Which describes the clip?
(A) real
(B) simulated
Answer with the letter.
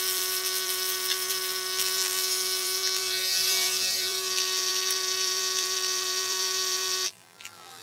B